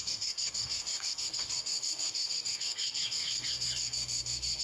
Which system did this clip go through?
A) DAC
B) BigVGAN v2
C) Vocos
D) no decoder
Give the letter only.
A